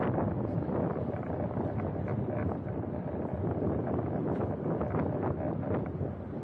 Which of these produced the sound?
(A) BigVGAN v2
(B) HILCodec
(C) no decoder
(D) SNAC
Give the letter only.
C